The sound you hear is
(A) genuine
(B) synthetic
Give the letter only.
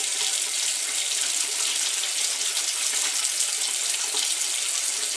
A